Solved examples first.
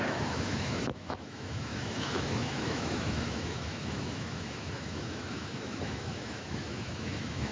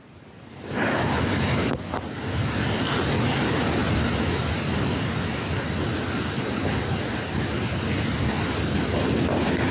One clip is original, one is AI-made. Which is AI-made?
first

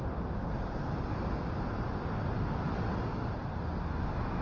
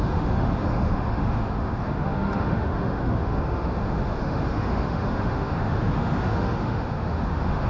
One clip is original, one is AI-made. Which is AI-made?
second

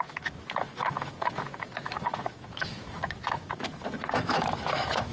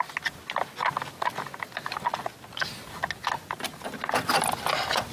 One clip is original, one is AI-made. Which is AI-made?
first